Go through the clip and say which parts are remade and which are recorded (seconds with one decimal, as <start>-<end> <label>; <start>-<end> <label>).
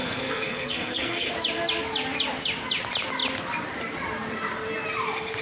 0.0-1.3 remade; 1.3-5.4 recorded